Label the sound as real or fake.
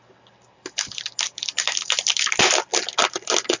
real